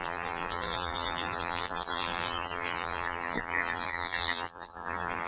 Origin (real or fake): fake